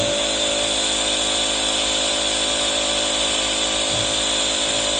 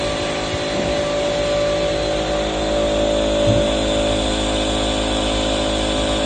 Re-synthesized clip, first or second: first